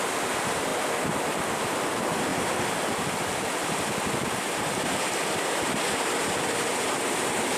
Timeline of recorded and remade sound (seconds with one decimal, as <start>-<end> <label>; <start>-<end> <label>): 0.0-2.3 recorded; 2.3-5.7 remade; 5.7-7.6 recorded